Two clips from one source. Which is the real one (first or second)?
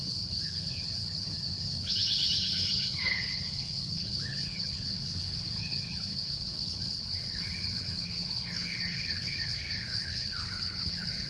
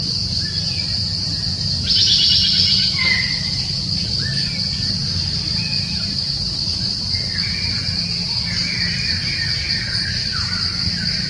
second